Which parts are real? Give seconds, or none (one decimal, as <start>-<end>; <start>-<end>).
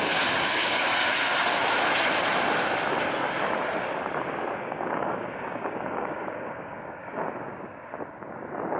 0.9-4.5; 7.0-8.8